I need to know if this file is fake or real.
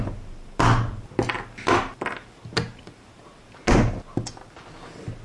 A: real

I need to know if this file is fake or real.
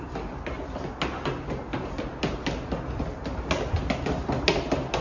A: real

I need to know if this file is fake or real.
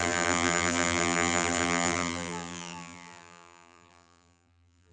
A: fake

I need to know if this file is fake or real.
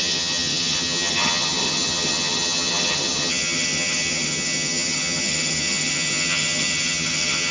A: fake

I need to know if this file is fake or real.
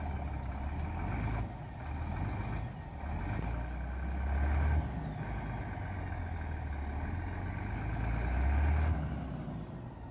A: real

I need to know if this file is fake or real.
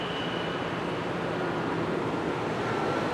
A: real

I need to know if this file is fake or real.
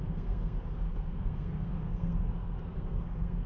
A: fake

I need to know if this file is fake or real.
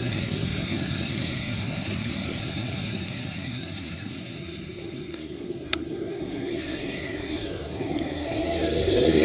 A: fake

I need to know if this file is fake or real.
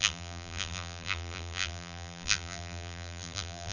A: fake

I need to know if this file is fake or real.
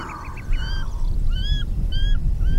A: real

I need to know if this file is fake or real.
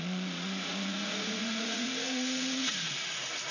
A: fake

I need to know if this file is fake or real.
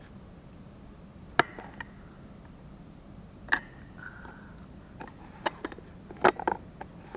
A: real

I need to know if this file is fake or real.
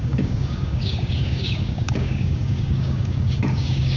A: fake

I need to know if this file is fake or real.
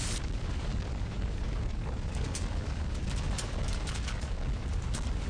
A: fake